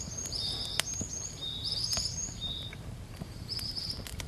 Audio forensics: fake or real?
fake